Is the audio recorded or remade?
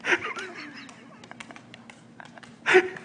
recorded